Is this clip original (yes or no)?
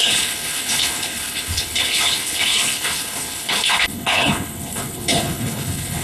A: no